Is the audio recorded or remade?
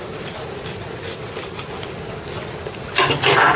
recorded